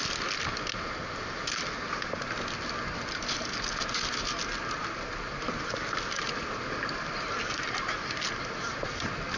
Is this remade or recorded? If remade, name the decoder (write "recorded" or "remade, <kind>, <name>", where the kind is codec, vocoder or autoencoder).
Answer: recorded